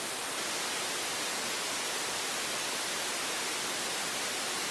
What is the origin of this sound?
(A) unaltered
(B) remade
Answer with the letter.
A